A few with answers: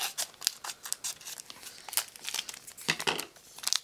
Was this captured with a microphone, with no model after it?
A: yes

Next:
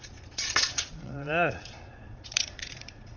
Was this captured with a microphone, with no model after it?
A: no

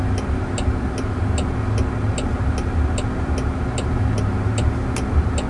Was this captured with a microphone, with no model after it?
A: yes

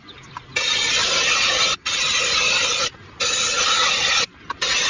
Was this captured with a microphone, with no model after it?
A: yes